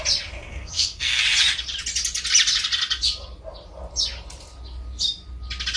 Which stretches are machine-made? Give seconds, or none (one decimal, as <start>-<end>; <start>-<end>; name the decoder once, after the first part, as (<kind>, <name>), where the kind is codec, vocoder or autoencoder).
0.5-1.2 (codec, SNAC)